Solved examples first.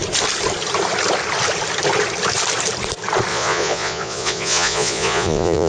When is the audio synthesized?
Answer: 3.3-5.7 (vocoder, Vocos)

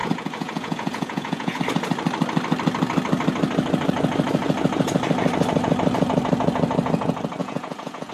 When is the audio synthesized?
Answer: 0.0-1.6 (vocoder, Vocos); 7.4-8.1

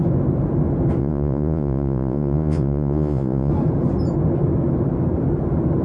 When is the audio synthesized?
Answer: 1.0-3.5 (vocoder, Vocos)

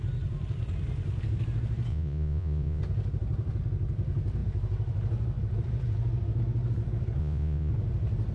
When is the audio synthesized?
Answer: 1.9-2.8 (vocoder, Vocos); 7.2-7.7

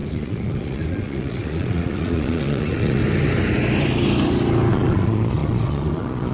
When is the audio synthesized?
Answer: 0.0-3.0 (vocoder, Vocos); 4.7-6.3